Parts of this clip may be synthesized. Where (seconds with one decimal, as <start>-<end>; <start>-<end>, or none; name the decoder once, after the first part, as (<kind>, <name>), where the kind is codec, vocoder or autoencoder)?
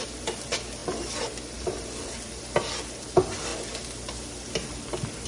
none